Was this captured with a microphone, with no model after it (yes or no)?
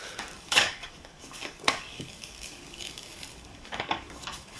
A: no